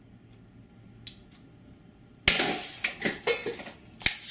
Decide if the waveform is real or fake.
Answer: real